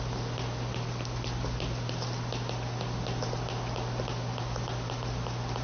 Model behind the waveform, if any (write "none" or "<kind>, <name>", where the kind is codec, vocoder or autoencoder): none